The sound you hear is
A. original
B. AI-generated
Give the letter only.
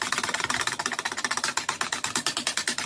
A